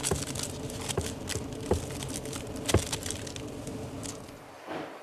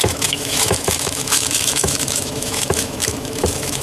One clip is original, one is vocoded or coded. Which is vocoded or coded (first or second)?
second